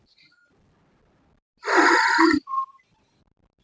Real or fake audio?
real